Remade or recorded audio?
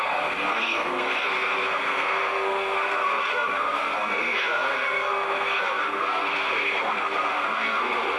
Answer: remade